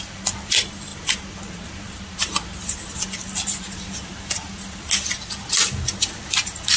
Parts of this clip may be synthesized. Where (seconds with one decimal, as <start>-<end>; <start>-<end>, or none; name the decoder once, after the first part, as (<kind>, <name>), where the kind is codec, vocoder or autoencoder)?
none